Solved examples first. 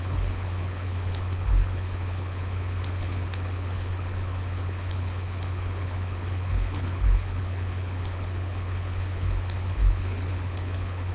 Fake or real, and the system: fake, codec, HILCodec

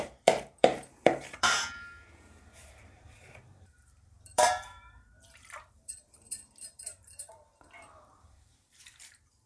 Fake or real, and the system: fake, vocoder, BigVGAN v2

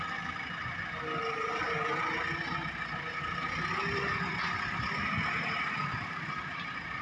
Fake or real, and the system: real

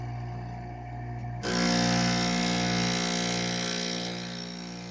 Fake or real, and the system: real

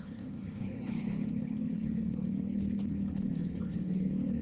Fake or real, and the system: fake, codec, HILCodec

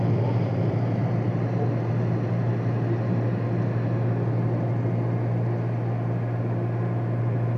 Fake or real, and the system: real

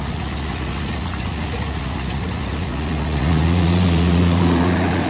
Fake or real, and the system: fake, vocoder, Vocos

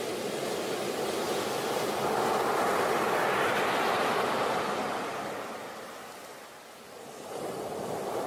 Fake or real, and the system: real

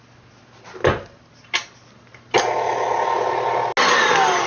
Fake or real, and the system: real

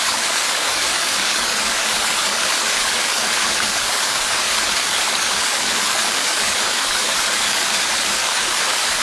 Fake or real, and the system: fake, codec, DAC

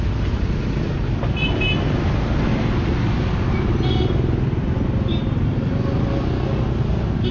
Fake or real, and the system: real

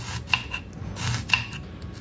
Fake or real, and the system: real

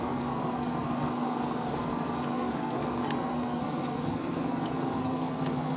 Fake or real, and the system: fake, codec, SNAC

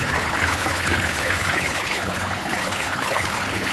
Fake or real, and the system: fake, codec, HILCodec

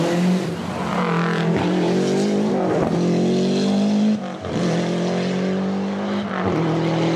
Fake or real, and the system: real